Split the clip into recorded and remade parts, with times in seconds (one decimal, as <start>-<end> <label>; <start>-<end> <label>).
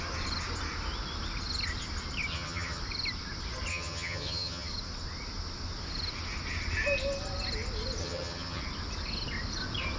0.0-2.3 recorded; 2.3-2.8 remade; 2.8-3.7 recorded; 3.7-4.7 remade; 4.7-8.0 recorded; 8.0-8.6 remade; 8.6-10.0 recorded